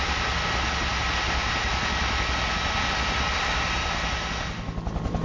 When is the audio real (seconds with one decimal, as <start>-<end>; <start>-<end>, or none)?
0.0-5.2